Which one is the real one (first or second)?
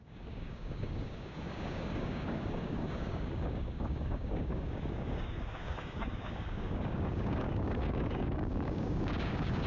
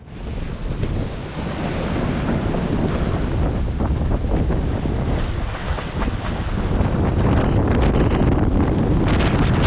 second